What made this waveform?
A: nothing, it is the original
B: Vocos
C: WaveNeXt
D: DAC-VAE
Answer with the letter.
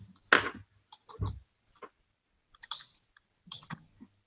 A